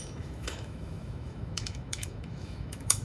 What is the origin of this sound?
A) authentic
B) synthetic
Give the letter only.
B